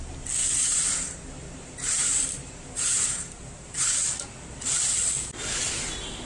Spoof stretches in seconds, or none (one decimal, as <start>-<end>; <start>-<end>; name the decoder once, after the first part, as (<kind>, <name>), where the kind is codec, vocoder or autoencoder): 0.4-4.0 (vocoder, BigVGAN v2)